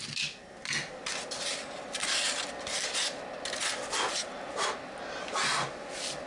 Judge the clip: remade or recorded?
recorded